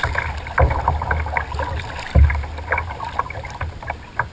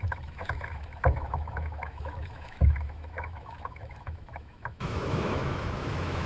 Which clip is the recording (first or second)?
first